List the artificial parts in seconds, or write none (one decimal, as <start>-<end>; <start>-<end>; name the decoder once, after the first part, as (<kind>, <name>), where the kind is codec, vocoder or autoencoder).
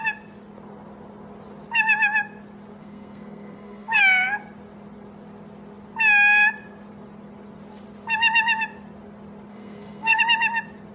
2.8-4.0 (codec, SNAC); 9.5-10.2